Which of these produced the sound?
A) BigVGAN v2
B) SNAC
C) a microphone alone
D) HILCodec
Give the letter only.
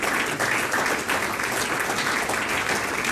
C